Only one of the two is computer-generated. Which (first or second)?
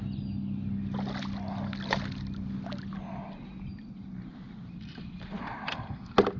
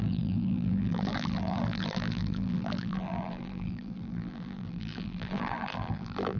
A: second